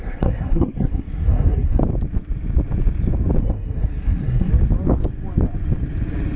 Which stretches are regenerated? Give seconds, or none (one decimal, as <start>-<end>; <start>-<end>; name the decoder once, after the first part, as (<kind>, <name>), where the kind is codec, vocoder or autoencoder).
0.0-1.8 (codec, SNAC); 3.4-4.5